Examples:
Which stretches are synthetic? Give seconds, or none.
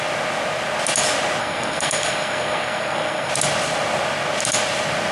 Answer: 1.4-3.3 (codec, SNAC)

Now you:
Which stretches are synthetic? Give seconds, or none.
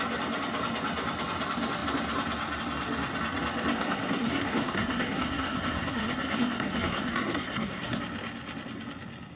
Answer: 3.7-8.0 (codec, SNAC)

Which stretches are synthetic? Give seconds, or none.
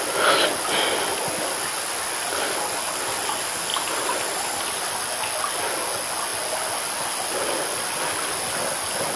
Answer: 3.7-5.0 (vocoder, BigVGAN v2)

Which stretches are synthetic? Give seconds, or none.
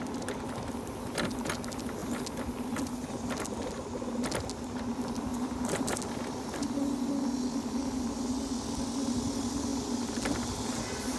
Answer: 5.3-6.0 (vocoder, BigVGAN v2)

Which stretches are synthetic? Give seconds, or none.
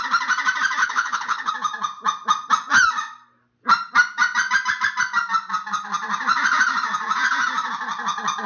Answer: 0.8-1.5 (codec, HILCodec)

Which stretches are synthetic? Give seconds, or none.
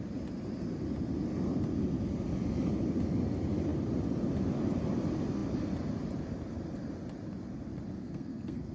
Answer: 8.0-8.7 (codec, SNAC)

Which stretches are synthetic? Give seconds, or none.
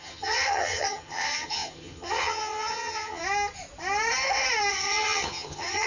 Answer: 0.0-3.2 (vocoder, HiFi-GAN); 4.7-5.9